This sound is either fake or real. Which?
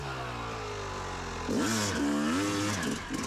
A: real